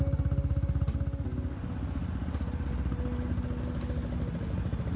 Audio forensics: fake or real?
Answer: real